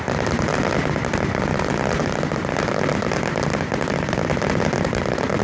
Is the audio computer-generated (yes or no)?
no